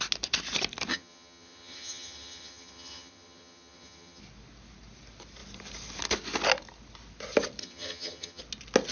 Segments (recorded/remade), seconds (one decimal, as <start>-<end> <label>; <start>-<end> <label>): 0.0-0.9 recorded; 0.9-4.2 remade; 4.2-7.6 recorded; 7.6-8.4 remade; 8.4-8.9 recorded